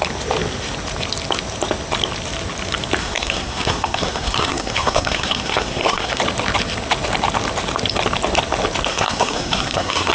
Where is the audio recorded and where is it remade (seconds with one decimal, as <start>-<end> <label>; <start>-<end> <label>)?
0.0-3.0 recorded; 3.0-6.2 remade; 6.2-8.9 recorded; 8.9-10.1 remade